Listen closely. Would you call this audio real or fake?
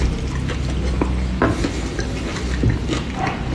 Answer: real